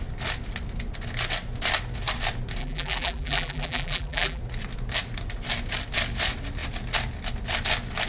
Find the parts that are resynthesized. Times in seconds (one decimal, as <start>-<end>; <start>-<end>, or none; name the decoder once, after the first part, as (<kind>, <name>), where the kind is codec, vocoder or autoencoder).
2.6-4.4 (vocoder, BigVGAN v2)